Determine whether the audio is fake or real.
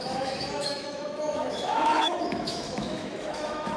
fake